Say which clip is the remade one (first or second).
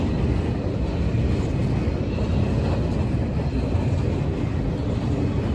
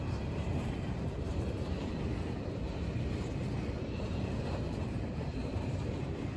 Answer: second